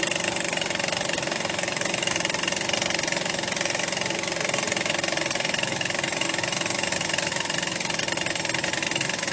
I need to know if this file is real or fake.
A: real